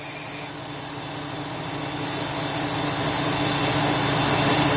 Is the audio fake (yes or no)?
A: no